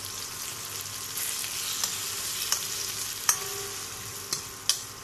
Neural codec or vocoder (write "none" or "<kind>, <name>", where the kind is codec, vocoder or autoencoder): none